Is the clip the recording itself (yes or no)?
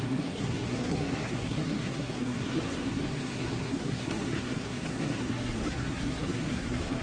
no